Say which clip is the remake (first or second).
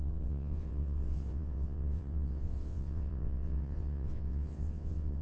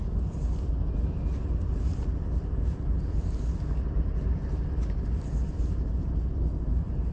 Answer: first